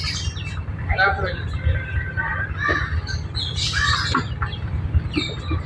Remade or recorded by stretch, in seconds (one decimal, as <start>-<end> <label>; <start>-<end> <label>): 0.0-5.7 recorded